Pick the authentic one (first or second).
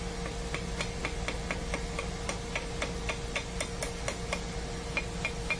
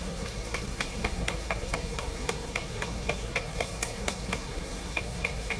first